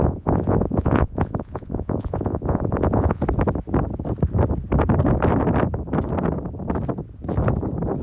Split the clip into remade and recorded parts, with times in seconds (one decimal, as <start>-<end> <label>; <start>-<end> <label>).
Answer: 0.0-3.2 remade; 3.2-8.0 recorded